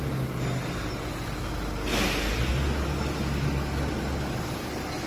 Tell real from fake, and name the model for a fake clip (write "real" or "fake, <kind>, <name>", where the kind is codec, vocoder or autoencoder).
real